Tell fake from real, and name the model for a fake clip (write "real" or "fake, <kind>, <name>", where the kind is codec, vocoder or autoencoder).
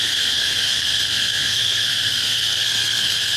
fake, codec, SNAC